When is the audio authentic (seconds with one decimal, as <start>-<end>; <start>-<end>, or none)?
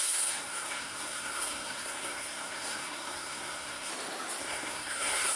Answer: 3.9-4.4